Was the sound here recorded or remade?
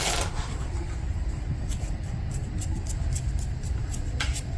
recorded